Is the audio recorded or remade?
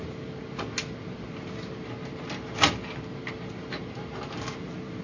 recorded